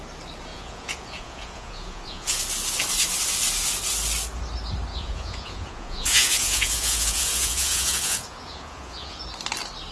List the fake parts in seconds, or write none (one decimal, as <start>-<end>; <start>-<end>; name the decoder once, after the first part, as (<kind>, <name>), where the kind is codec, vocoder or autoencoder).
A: 0.5-2.4 (vocoder, Vocos); 4.9-9.2